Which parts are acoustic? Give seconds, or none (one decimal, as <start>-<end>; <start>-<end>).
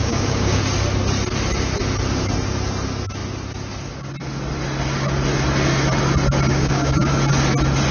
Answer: 0.6-6.5; 7.1-7.9